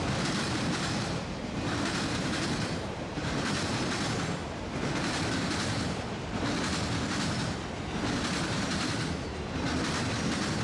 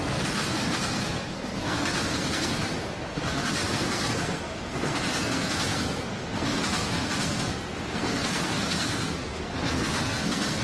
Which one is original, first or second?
first